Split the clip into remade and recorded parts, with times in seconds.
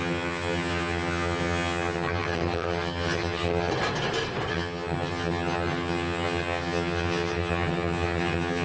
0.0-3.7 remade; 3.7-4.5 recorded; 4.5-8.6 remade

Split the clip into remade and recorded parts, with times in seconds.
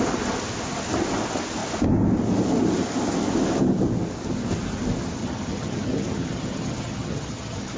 0.0-5.2 recorded; 5.2-7.8 remade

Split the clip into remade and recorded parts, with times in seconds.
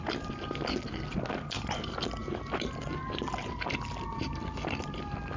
0.0-5.4 recorded